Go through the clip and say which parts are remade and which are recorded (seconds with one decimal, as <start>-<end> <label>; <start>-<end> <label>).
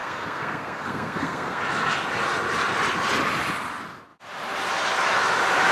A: 0.0-1.6 remade; 1.6-5.7 recorded